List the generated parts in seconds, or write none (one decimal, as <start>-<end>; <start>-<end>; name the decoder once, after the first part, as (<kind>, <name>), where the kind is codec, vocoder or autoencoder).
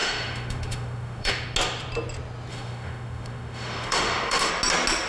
0.0-1.3 (autoencoder, DAC-VAE); 2.5-4.5